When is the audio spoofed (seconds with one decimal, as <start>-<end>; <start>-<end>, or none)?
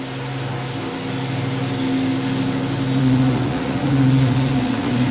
3.0-5.1